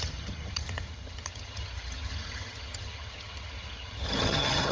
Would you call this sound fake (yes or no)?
yes